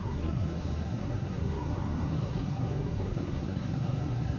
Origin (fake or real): fake